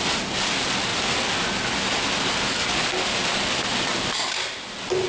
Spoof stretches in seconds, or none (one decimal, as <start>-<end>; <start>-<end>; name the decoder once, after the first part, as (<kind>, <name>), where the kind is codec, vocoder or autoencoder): none